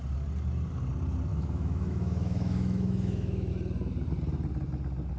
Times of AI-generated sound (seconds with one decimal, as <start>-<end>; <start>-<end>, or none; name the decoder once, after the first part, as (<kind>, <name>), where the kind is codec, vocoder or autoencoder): 1.3-3.5 (autoencoder, DAC-VAE)